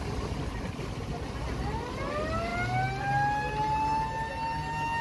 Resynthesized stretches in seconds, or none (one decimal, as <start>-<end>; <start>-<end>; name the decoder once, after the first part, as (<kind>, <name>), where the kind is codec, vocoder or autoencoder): none